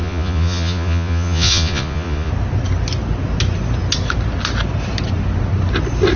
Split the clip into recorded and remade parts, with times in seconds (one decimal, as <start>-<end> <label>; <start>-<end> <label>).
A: 0.0-2.3 remade; 2.3-6.2 recorded